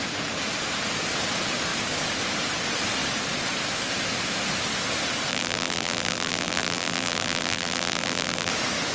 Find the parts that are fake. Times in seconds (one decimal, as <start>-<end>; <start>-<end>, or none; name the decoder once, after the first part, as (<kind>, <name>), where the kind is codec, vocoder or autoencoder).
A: 5.3-8.5 (vocoder, BigVGAN v2)